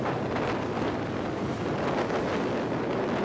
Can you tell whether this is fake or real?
real